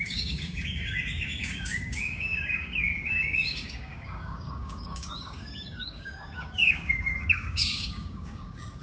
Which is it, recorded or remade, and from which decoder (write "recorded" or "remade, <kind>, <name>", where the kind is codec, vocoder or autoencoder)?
remade, codec, DAC